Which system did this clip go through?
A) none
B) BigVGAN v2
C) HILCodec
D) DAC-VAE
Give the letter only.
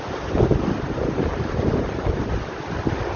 A